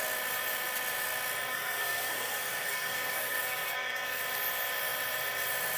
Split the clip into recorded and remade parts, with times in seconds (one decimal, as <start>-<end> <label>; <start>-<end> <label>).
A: 0.0-1.5 recorded; 1.5-4.2 remade; 4.2-5.8 recorded